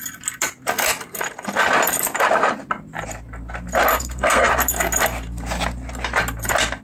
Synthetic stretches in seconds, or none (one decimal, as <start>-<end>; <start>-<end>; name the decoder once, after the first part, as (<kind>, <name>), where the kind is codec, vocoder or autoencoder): 3.9-4.5 (codec, SNAC)